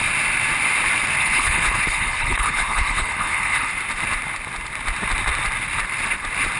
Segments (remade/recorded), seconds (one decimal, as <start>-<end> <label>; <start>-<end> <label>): 0.0-1.2 recorded; 1.2-3.7 remade; 3.7-6.6 recorded